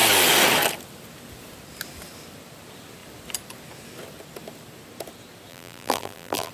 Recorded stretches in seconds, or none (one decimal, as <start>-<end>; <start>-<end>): 0.0-5.5